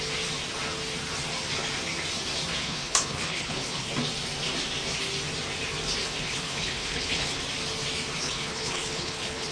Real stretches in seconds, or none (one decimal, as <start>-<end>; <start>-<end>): 0.0-2.6; 3.9-6.0; 7.4-8.2